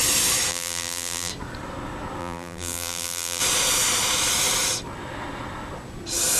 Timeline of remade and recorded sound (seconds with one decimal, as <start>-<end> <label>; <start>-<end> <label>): 0.0-0.5 recorded; 0.5-1.3 remade; 1.3-2.2 recorded; 2.2-3.4 remade; 3.4-6.4 recorded